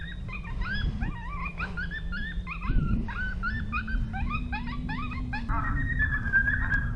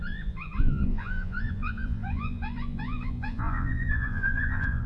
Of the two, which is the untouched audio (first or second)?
first